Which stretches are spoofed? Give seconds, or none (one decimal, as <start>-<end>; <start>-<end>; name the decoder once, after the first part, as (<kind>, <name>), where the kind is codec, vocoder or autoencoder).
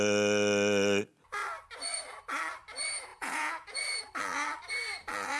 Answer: 3.1-4.0 (vocoder, Vocos)